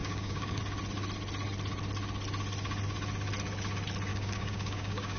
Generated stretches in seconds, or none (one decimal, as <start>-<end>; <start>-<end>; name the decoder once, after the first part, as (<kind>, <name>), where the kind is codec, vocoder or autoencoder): 0.0-0.6 (codec, DAC); 4.1-5.2